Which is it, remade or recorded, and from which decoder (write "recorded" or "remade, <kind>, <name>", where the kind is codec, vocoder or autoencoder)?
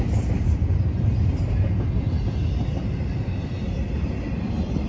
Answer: recorded